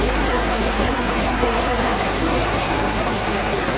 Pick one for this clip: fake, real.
fake